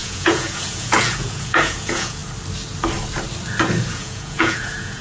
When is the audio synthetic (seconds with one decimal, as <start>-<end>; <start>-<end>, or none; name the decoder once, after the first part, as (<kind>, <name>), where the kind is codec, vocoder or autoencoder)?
0.0-2.2 (vocoder, Vocos); 3.9-5.0